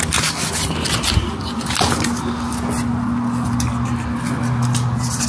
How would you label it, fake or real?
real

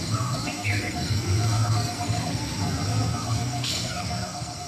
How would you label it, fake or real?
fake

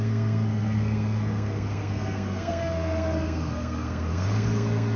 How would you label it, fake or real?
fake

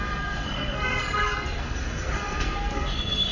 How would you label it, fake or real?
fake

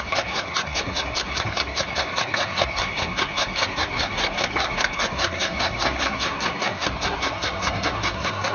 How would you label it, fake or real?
fake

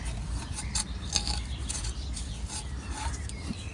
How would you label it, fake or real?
real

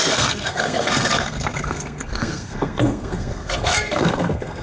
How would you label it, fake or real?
fake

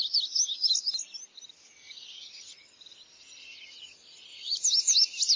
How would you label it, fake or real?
real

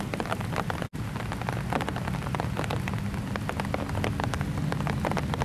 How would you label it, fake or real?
real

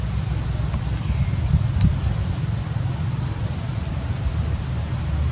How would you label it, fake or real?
real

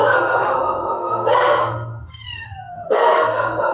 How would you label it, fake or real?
fake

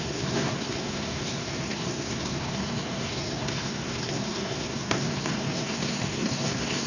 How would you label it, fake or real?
fake